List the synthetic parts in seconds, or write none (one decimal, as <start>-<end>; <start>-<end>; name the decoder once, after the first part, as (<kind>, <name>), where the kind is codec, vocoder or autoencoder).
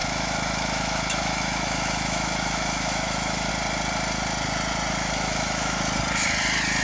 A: 0.0-3.5 (autoencoder, DAC-VAE); 4.9-5.8